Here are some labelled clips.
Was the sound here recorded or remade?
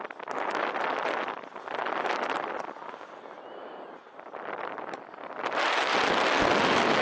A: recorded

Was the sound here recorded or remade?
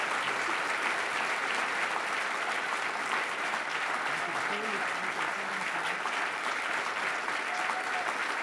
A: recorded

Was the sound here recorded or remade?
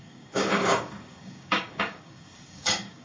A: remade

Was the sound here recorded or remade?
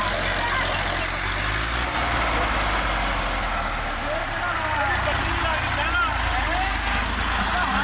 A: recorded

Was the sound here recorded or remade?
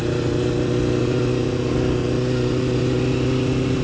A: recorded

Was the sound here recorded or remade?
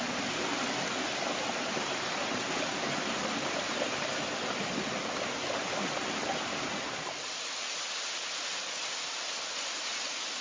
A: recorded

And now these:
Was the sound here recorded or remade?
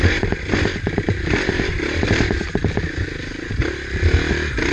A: recorded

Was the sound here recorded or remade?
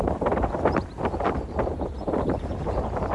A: remade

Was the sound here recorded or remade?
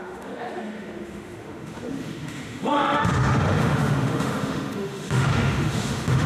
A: remade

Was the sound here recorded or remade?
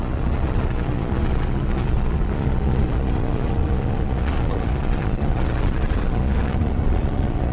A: remade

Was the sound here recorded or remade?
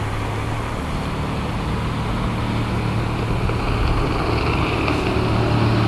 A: recorded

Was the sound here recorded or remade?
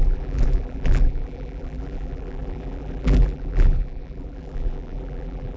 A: remade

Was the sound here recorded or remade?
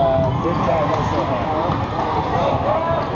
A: recorded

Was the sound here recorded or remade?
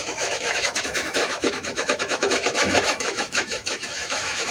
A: remade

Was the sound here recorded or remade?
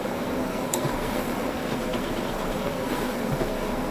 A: remade